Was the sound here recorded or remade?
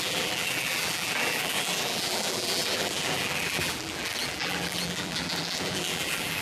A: remade